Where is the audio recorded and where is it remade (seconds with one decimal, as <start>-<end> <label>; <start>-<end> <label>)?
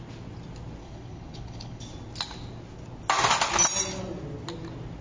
0.0-0.8 recorded; 0.8-1.8 remade; 1.8-5.0 recorded